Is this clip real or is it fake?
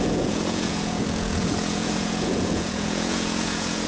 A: fake